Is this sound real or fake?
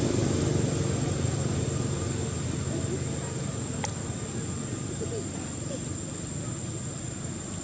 real